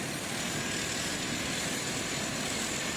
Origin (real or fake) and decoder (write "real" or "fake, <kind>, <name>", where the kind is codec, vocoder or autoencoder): real